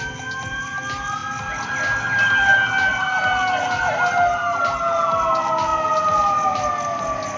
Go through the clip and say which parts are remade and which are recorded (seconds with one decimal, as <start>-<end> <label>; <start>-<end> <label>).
0.0-7.4 recorded